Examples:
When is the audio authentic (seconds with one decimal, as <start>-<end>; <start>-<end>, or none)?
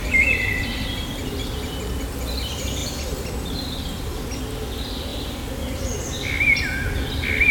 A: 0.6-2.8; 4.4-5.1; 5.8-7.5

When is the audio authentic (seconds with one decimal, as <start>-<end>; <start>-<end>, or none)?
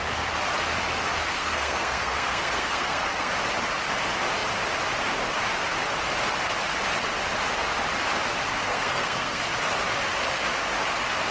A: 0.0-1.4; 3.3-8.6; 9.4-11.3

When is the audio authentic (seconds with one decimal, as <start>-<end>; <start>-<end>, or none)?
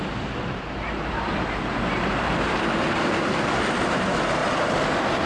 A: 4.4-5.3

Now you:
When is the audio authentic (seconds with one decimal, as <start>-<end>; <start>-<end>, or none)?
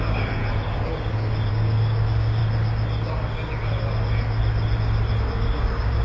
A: 0.4-1.5; 2.4-5.2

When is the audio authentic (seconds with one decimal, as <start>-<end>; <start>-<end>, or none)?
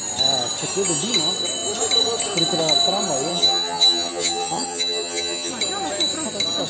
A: 0.0-3.3; 5.5-6.7